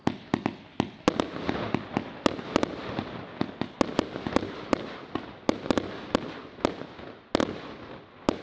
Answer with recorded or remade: recorded